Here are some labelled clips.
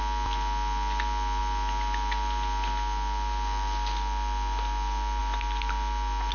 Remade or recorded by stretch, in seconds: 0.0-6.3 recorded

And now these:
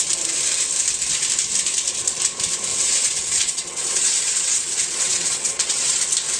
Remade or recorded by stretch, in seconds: 0.0-2.7 recorded; 2.7-6.0 remade; 6.0-6.4 recorded